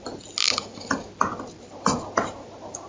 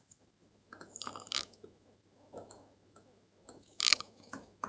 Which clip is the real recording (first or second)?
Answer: first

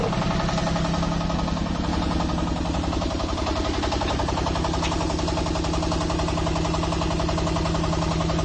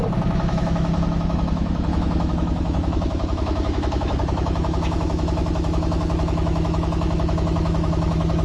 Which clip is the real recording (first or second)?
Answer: first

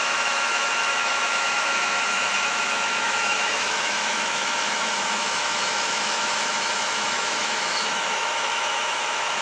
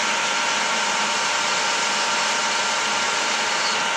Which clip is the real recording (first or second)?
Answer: second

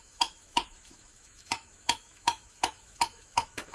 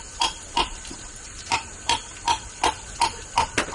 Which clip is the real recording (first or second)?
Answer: second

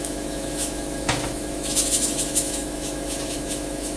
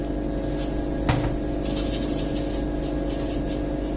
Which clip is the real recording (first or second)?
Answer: second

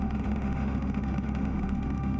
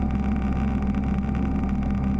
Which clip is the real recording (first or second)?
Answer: second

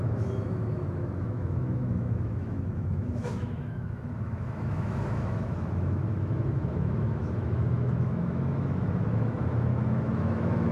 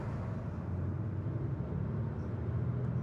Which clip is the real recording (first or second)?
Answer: second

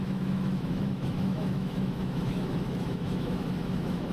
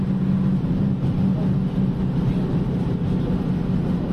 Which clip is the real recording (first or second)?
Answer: second